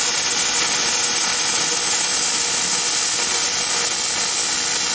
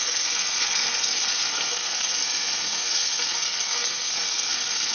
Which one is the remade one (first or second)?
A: second